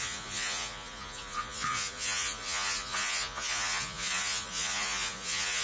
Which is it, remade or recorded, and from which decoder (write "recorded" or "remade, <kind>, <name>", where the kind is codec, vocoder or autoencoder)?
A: remade, vocoder, Vocos